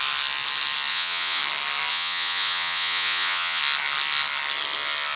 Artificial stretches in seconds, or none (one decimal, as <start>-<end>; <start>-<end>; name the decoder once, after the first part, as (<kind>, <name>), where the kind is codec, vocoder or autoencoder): 0.9-1.4 (vocoder, Vocos); 1.9-3.6